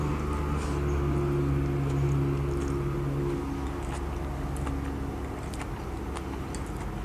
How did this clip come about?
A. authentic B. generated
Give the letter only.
A